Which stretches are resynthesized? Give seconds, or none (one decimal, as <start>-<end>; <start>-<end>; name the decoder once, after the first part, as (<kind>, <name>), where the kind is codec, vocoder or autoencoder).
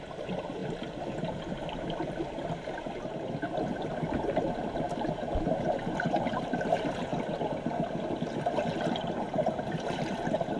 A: 0.6-4.7 (vocoder, BigVGAN v2)